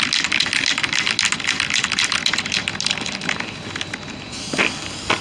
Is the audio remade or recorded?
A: recorded